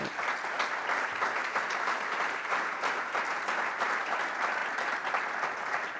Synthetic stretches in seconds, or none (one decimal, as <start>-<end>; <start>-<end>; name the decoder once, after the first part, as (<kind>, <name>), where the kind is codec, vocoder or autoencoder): 1.4-4.1 (vocoder, BigVGAN v2)